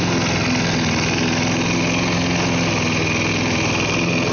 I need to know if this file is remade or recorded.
recorded